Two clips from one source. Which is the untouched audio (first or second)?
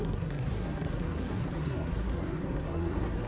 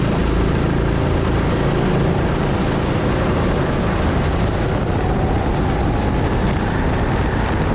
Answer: second